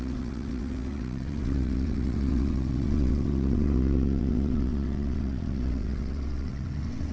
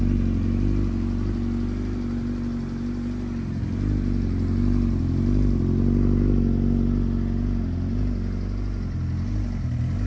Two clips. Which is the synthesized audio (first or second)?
first